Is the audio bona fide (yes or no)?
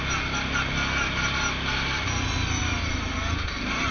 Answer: yes